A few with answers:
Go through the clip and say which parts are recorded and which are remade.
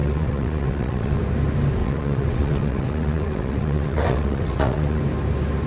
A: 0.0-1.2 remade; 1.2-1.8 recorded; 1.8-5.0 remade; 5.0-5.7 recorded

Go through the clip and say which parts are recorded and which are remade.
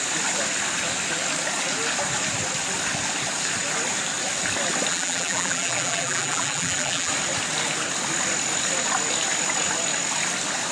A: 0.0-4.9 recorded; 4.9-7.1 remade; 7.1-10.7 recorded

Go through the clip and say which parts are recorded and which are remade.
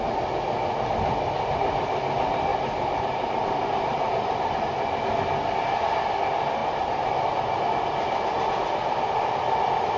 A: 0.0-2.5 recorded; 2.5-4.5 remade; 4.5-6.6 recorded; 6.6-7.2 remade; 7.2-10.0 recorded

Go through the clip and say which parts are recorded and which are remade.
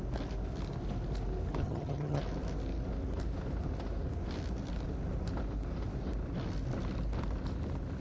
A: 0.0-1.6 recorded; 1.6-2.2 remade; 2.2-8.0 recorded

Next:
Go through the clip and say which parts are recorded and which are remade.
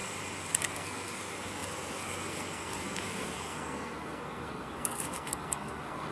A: 0.0-0.6 recorded; 0.6-6.1 remade